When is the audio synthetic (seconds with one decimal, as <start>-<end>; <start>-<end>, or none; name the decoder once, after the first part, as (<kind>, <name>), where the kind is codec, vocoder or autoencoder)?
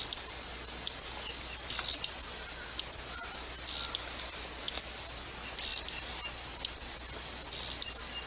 none